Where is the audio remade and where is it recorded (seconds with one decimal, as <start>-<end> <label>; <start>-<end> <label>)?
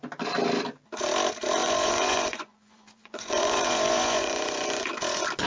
0.0-1.6 recorded; 1.6-4.9 remade; 4.9-5.5 recorded